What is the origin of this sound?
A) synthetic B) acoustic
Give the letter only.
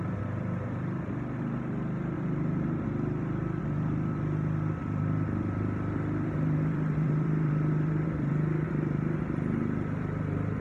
A